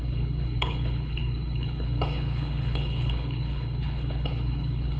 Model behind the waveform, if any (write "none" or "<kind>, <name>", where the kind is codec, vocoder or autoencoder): codec, HILCodec